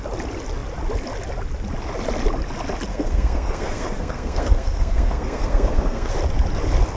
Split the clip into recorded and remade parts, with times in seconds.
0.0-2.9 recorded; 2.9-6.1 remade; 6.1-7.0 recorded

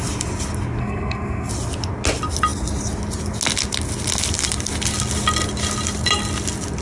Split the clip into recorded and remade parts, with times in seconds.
0.0-0.8 recorded; 0.8-1.5 remade; 1.5-6.8 recorded

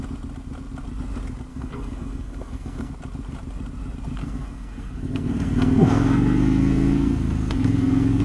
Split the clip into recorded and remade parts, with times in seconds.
0.0-1.5 recorded; 1.5-2.9 remade; 2.9-4.2 recorded; 4.2-8.2 remade

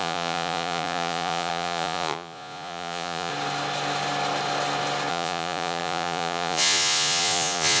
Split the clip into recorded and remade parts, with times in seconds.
0.0-3.3 remade; 3.3-5.1 recorded; 5.1-7.8 remade

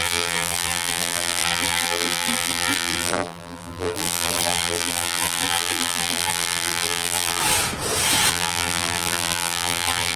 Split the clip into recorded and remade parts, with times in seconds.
0.0-7.4 remade; 7.4-8.3 recorded; 8.3-10.2 remade

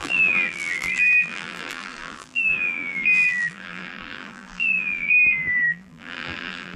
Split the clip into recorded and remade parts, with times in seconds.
0.0-6.8 remade

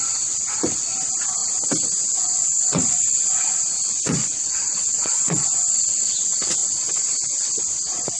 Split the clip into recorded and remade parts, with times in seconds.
0.0-4.3 recorded; 4.3-5.6 remade; 5.6-6.6 recorded; 6.6-8.2 remade

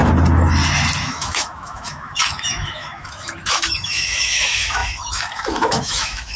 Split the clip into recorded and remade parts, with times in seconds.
0.0-1.0 recorded; 1.0-6.4 remade